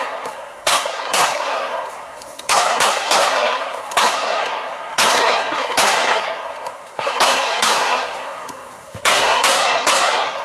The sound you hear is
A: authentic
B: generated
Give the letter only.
B